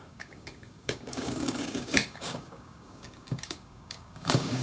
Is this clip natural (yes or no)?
no